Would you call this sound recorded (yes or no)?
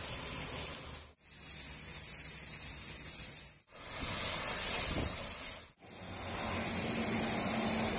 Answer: yes